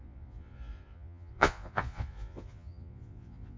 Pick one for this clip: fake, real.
fake